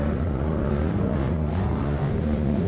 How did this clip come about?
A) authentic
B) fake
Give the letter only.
B